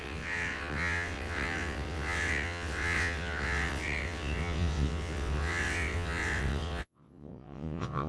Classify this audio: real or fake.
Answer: fake